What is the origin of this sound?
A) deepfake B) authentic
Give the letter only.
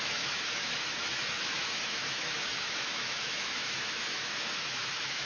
A